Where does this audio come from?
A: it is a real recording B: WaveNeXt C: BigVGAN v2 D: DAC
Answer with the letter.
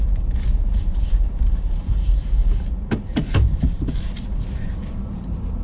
C